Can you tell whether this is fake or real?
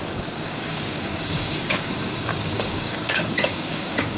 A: fake